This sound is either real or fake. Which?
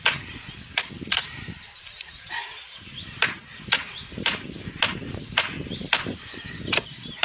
fake